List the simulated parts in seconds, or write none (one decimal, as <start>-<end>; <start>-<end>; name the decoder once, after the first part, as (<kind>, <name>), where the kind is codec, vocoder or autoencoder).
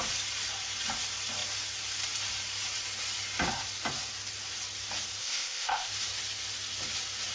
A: 5.2-5.9 (codec, ZipCodec)